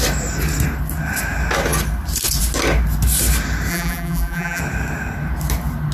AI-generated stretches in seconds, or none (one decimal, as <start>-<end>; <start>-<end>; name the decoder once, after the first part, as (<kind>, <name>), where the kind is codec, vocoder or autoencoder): 3.7-4.6 (vocoder, BigVGAN v2)